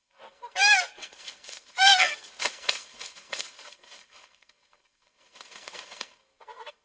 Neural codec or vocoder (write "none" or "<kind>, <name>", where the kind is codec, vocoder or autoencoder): codec, SNAC